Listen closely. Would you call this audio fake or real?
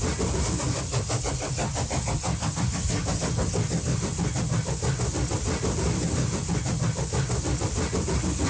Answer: real